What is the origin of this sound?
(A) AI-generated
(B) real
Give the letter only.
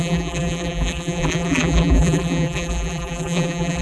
A